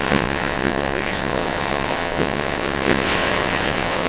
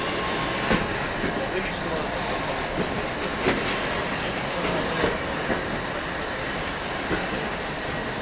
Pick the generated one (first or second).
first